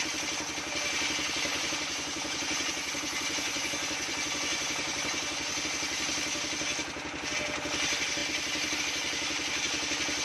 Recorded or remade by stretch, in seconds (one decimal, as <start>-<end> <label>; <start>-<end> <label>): 0.0-1.5 recorded; 1.5-5.6 remade; 5.6-10.2 recorded